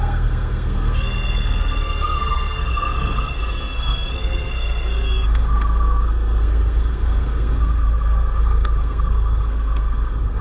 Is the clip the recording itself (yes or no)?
no